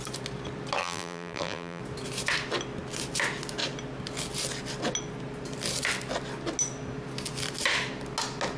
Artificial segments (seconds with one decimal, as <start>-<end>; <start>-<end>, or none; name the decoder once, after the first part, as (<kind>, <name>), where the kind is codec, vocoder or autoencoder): 0.8-1.8 (vocoder, BigVGAN v2)